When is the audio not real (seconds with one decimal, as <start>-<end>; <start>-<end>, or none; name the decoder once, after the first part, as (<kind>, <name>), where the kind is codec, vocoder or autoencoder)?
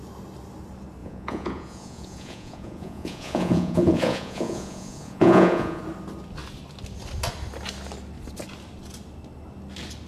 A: 1.0-5.8 (vocoder, Vocos)